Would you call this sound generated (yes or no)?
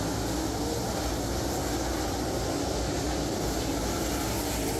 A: no